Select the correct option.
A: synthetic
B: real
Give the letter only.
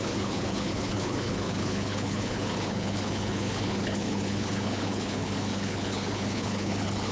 A